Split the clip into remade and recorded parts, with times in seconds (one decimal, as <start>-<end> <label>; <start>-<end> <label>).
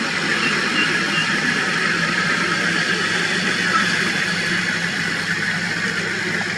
0.0-1.2 recorded; 1.2-3.2 remade; 3.2-6.6 recorded